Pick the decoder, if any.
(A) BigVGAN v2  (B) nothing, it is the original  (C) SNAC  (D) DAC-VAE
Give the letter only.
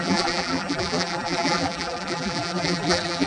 A